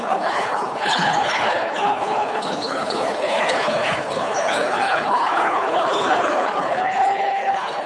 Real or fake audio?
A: fake